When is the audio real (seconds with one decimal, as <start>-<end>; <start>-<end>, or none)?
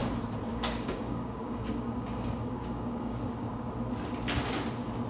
0.0-0.5; 3.6-5.1